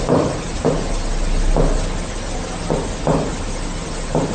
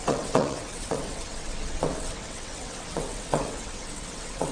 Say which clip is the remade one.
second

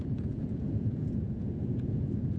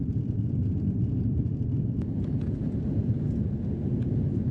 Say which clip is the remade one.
first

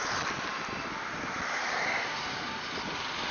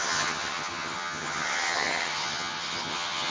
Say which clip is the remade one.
second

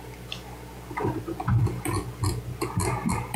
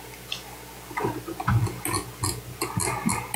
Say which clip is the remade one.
first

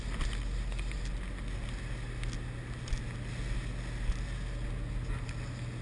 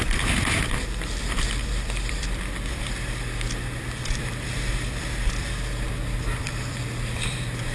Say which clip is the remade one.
second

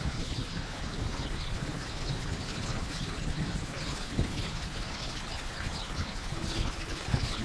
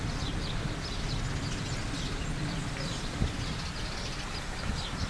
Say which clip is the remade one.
first